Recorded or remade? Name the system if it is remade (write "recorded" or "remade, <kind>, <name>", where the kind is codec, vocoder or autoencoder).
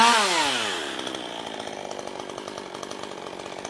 recorded